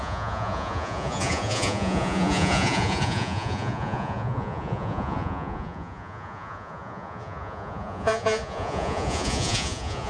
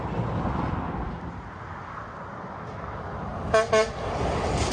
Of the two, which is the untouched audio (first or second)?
second